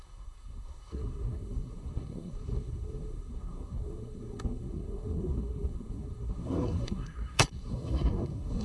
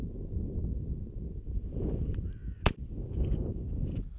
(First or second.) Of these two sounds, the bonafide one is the second